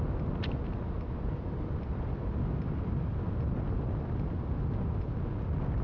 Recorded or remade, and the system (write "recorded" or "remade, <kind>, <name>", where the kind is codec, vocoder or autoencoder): recorded